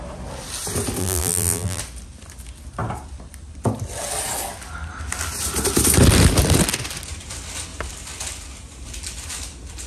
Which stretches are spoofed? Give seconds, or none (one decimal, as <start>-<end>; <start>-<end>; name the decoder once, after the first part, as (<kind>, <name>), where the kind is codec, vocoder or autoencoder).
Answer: 1.0-1.8 (vocoder, BigVGAN v2)